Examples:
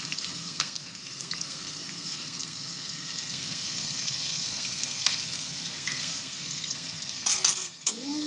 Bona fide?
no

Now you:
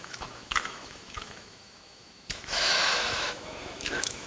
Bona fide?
no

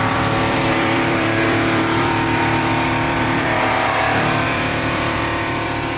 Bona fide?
no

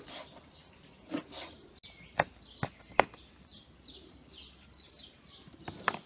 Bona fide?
yes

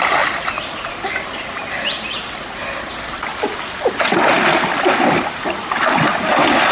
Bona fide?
yes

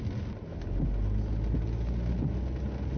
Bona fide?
yes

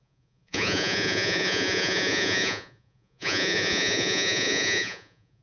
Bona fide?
no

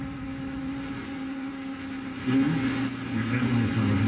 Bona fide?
yes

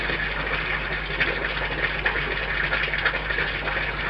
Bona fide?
yes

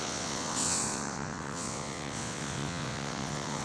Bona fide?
no